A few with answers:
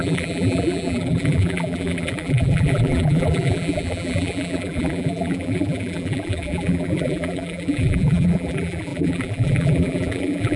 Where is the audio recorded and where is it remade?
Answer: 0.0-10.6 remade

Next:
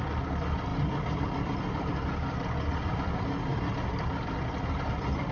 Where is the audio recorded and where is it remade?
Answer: 0.0-0.7 recorded; 0.7-1.9 remade; 1.9-5.3 recorded

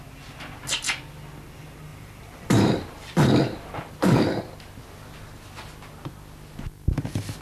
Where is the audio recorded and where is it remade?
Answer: 0.0-1.9 recorded; 1.9-4.4 remade; 4.4-7.4 recorded

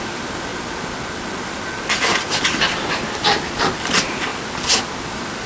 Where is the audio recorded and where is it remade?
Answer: 0.0-0.5 remade; 0.5-3.8 recorded; 3.8-4.3 remade; 4.3-5.1 recorded; 5.1-5.5 remade

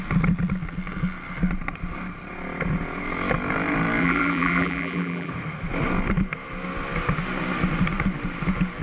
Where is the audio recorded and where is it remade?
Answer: 0.0-4.0 recorded; 4.0-5.3 remade; 5.3-8.8 recorded

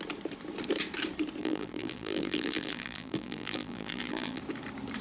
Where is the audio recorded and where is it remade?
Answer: 0.0-1.4 recorded; 1.4-4.4 remade; 4.4-5.0 recorded

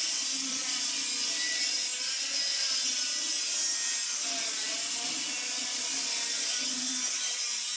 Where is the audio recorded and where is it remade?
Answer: 0.0-1.9 remade; 1.9-4.8 recorded; 4.8-7.8 remade